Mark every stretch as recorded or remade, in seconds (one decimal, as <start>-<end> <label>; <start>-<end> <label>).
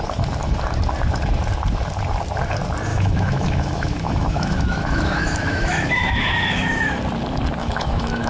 0.0-2.9 recorded; 2.9-7.0 remade; 7.0-7.6 recorded; 7.6-8.3 remade